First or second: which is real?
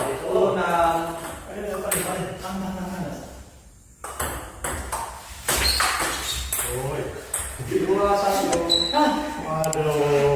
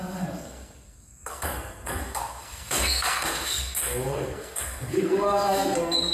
first